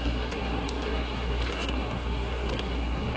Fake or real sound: fake